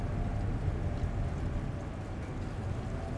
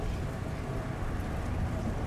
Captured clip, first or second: first